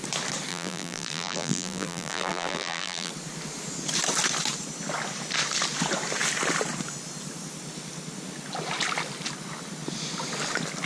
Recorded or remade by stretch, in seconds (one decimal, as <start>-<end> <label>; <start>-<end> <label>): 0.0-0.5 recorded; 0.5-3.1 remade; 3.1-10.9 recorded